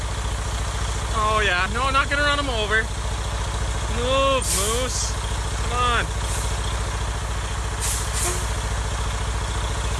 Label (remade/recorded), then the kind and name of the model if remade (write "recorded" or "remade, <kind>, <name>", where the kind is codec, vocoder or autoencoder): recorded